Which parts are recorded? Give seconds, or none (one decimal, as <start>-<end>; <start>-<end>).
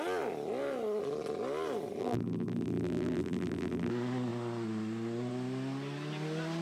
0.0-2.0; 3.9-6.6